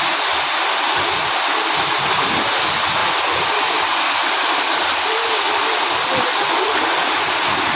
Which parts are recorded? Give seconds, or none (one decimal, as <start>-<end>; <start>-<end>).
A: 0.0-3.0; 6.2-7.8